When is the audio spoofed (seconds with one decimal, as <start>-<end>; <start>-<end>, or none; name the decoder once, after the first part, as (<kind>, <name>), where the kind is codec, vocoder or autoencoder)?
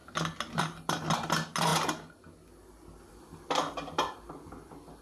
none